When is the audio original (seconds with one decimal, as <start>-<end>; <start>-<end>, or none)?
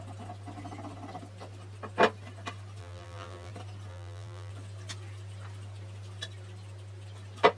0.0-2.8; 3.5-3.9; 4.5-7.6